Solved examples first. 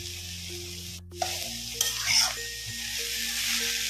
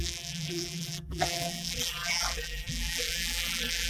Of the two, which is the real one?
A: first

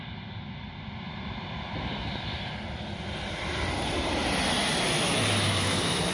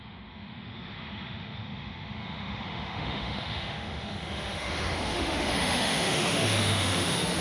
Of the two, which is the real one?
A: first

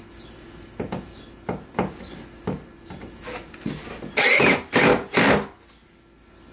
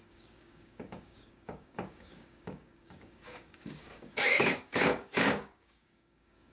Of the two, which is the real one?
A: first